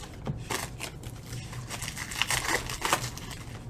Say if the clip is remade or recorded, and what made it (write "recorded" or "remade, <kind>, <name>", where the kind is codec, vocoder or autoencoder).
recorded